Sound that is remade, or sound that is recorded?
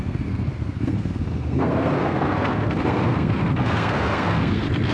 remade